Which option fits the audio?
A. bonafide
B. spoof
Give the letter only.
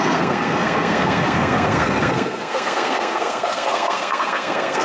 B